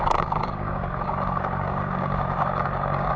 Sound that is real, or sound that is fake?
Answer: fake